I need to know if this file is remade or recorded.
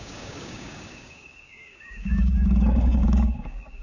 remade